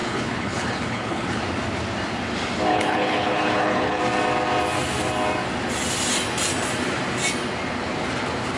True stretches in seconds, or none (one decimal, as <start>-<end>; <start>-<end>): 1.4-2.7; 4.0-8.6